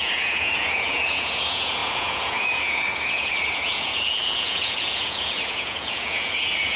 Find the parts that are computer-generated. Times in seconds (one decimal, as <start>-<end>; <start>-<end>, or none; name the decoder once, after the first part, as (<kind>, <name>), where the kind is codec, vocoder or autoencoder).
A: 0.0-6.8 (vocoder, Vocos)